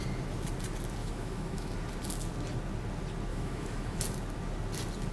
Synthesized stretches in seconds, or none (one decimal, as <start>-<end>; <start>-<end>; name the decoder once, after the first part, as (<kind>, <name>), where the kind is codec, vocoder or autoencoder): 1.0-1.7 (autoencoder, DAC-VAE); 3.3-4.0